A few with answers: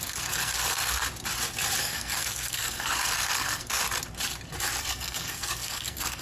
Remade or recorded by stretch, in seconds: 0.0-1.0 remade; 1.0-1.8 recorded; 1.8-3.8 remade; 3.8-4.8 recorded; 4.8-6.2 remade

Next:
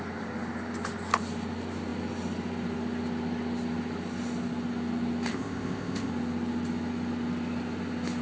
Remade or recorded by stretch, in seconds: 0.0-5.3 recorded; 5.3-6.1 remade; 6.1-8.2 recorded

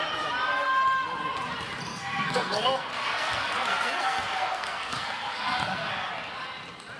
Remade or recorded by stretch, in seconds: 0.0-1.9 recorded; 1.9-6.1 remade; 6.1-7.0 recorded

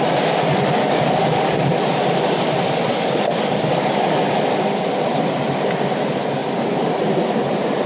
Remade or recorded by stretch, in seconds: 0.0-0.8 recorded; 0.8-1.8 remade; 1.8-2.9 recorded; 2.9-4.2 remade; 4.2-7.9 recorded

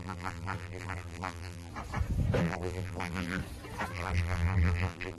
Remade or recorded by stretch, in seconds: 0.0-1.7 remade; 1.7-2.4 recorded; 2.4-3.4 remade; 3.4-3.9 recorded; 3.9-5.2 remade